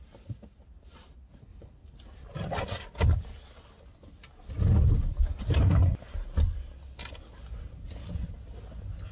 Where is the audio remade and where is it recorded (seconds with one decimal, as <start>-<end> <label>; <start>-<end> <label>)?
0.0-1.5 recorded; 1.5-3.4 remade; 3.4-9.1 recorded